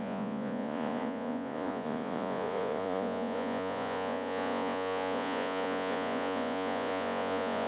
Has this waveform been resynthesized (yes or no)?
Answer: yes